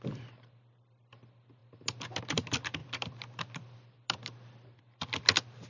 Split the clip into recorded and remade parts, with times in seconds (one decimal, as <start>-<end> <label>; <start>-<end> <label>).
0.0-5.7 recorded